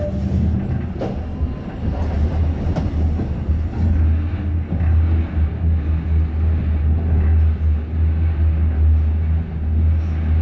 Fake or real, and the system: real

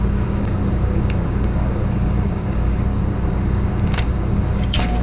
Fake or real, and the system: fake, codec, DAC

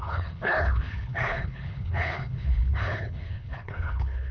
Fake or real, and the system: fake, codec, HILCodec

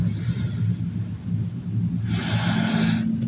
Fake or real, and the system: real